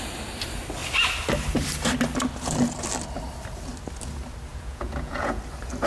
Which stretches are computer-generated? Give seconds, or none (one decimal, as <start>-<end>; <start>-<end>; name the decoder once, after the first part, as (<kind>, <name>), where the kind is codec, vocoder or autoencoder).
4.5-5.4 (vocoder, Vocos)